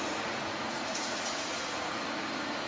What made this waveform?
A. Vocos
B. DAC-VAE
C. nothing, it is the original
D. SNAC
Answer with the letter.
A